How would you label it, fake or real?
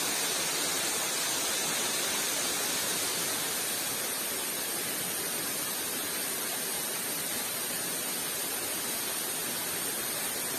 real